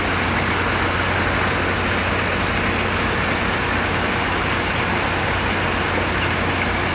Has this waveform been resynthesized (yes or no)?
no